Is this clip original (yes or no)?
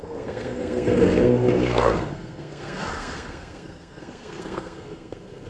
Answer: no